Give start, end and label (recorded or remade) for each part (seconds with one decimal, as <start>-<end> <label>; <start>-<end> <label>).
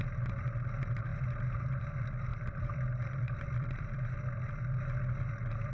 0.0-2.3 recorded; 2.3-4.0 remade; 4.0-5.7 recorded